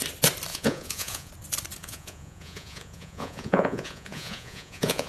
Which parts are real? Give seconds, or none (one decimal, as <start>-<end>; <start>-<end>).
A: 0.0-0.5; 1.3-1.8

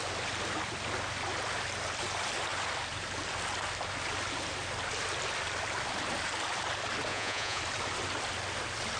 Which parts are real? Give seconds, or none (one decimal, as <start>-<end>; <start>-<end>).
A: 0.0-7.1; 7.6-9.0

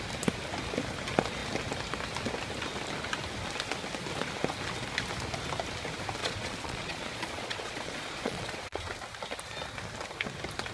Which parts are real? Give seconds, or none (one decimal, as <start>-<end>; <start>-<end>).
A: 0.0-6.2; 8.9-10.7

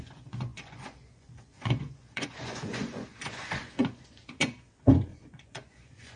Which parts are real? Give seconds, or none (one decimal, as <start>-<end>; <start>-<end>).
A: none

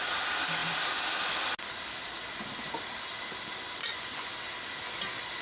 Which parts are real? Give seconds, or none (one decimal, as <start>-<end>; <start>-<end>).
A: 0.0-3.8; 4.3-5.4

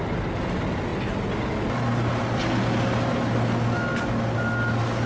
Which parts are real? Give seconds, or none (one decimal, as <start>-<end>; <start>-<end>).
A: 0.0-5.1

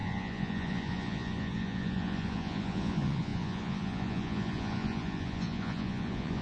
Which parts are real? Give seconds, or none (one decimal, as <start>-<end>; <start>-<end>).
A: none